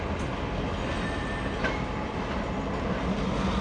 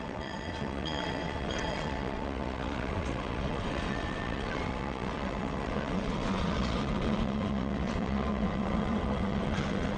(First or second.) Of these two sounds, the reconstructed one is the second